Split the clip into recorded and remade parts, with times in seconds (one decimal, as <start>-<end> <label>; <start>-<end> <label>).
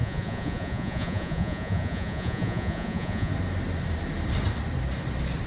0.0-3.3 remade; 3.3-5.5 recorded